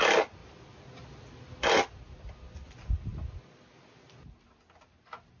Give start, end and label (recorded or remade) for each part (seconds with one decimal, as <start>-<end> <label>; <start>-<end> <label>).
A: 0.0-5.4 recorded